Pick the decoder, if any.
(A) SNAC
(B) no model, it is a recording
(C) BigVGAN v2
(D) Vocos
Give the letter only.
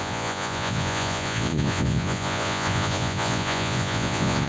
D